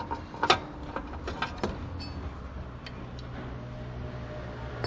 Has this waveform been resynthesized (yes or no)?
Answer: no